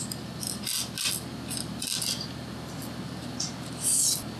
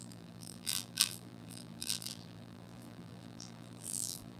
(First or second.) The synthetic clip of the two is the second